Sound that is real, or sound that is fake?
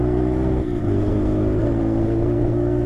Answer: fake